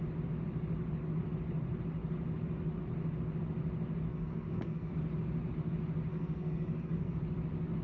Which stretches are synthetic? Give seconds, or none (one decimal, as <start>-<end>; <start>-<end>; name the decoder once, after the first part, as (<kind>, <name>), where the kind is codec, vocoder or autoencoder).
4.1-4.9 (codec, SNAC); 6.1-7.2